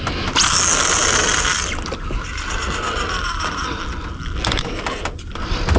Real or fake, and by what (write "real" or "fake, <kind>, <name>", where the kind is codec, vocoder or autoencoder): real